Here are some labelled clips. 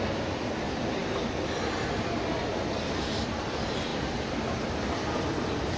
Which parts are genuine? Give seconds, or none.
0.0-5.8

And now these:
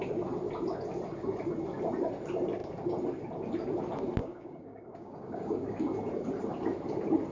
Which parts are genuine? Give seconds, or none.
0.0-4.2; 5.7-7.3

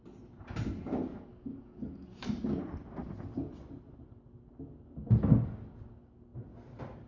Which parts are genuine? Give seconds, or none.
0.0-1.3; 2.6-7.1

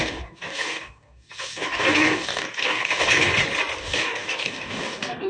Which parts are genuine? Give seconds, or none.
3.3-3.8

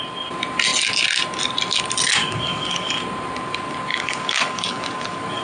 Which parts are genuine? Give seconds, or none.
0.0-2.2; 2.9-3.9

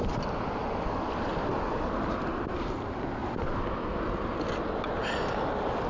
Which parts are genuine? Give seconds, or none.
0.0-5.9

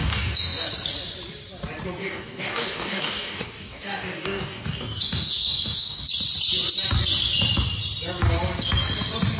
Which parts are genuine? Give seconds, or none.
0.7-2.0; 6.0-9.4

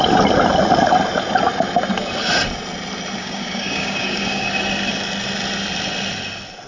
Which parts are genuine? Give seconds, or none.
0.0-3.2; 4.5-6.7